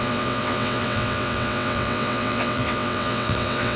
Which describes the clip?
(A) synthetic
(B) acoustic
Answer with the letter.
A